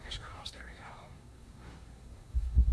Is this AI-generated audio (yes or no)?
yes